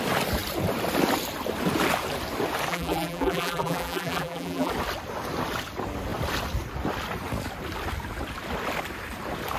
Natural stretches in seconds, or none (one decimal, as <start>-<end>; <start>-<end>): 0.0-2.7; 4.7-9.6